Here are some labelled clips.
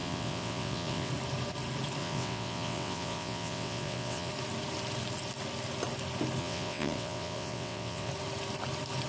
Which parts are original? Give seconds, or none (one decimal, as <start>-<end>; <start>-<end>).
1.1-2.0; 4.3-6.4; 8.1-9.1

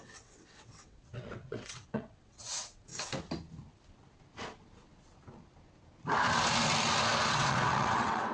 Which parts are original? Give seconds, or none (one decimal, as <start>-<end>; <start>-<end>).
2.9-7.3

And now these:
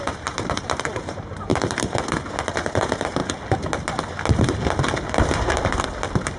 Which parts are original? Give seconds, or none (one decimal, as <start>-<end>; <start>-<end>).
1.5-2.8; 3.2-6.4